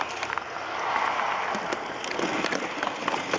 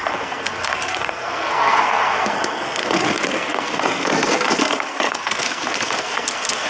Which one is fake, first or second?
second